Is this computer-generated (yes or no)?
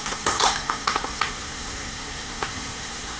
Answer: yes